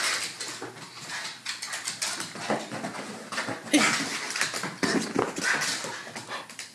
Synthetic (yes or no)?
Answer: no